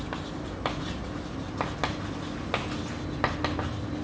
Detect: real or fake real